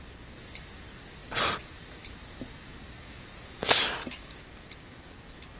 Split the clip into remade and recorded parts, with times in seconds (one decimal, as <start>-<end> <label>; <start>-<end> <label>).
0.0-5.6 recorded